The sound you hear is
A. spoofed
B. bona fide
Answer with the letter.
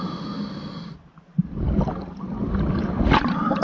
B